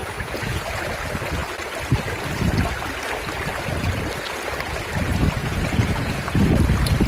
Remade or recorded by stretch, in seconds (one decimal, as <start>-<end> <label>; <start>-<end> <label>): 0.0-0.8 remade; 0.8-5.4 recorded; 5.4-6.4 remade; 6.4-7.1 recorded

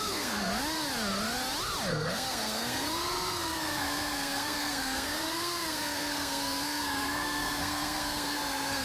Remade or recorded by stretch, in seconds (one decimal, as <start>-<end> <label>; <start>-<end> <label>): 0.0-0.5 remade; 0.5-1.9 recorded; 1.9-8.8 remade

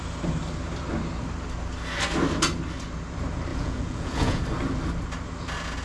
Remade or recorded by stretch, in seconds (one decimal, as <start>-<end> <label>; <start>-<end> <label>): 0.0-3.5 recorded; 3.5-4.4 remade; 4.4-5.8 recorded